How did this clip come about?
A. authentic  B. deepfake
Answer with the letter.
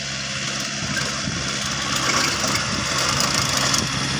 A